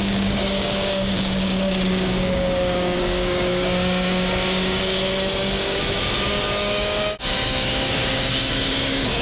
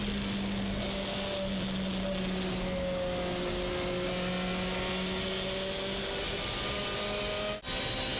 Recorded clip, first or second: second